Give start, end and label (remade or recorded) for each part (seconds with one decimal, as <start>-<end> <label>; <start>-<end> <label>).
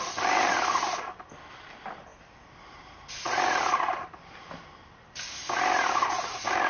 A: 0.0-6.7 recorded